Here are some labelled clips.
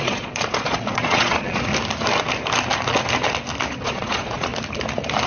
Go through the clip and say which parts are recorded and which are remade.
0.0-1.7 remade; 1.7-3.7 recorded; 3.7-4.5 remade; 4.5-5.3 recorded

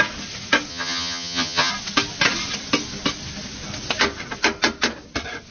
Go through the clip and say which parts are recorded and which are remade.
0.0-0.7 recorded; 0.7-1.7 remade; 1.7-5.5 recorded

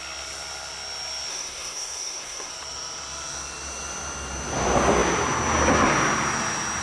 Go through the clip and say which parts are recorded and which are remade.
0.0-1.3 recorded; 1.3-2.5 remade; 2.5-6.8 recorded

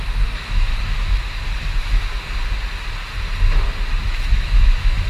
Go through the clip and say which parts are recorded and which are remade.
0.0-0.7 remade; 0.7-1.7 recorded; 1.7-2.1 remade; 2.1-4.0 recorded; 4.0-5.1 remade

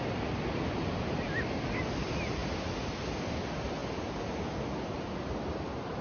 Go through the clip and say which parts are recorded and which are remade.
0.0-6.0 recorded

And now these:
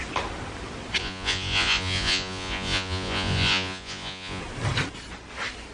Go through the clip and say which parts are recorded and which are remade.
0.0-1.0 recorded; 1.0-4.4 remade; 4.4-5.7 recorded

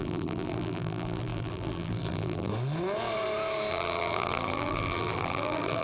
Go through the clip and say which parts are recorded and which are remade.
0.0-2.5 remade; 2.5-3.7 recorded; 3.7-5.8 remade

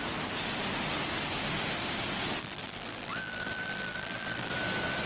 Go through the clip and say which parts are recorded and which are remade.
0.0-2.4 recorded; 2.4-4.5 remade; 4.5-5.1 recorded